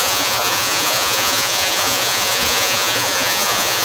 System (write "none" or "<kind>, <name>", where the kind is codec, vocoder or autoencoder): vocoder, Vocos